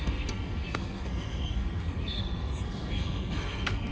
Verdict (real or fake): fake